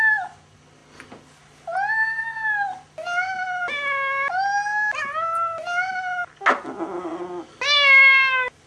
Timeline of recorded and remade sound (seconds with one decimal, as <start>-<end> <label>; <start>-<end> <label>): 0.0-8.7 recorded